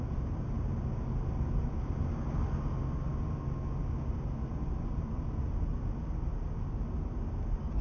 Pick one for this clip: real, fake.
real